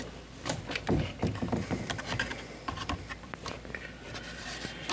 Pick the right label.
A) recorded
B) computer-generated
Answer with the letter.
B